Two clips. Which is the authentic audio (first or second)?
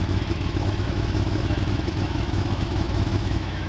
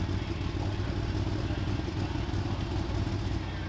second